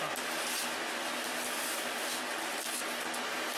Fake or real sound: real